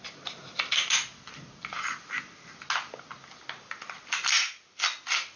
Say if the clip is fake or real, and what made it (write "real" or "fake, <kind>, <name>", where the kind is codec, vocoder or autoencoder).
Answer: real